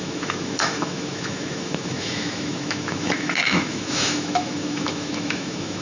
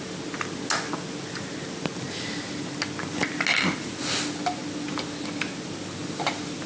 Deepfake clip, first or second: first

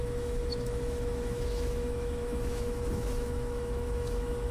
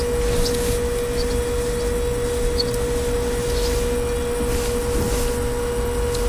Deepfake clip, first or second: first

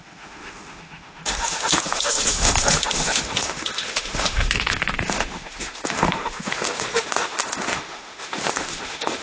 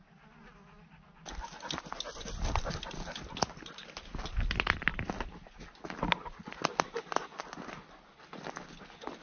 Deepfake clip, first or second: first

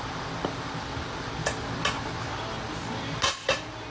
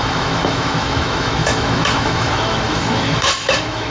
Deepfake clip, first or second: second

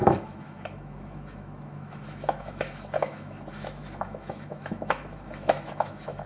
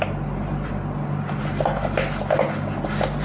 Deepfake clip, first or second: first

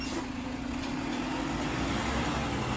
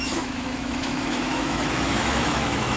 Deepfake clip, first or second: second